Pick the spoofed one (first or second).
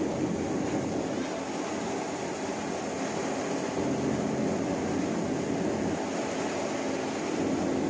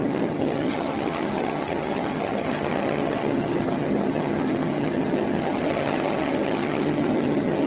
second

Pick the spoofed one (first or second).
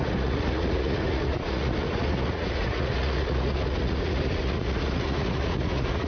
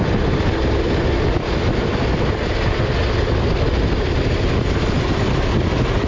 first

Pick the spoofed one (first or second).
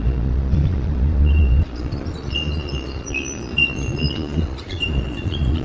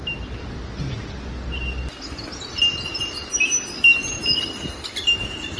first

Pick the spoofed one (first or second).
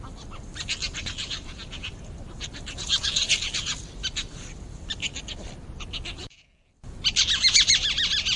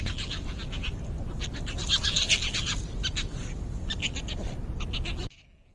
first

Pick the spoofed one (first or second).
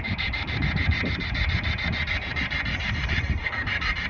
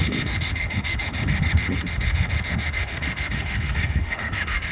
second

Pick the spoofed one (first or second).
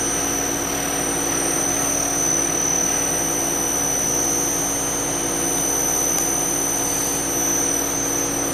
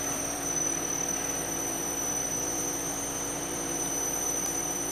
second